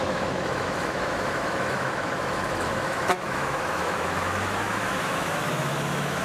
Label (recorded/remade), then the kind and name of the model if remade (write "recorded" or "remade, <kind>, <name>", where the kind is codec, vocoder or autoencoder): remade, autoencoder, DAC-VAE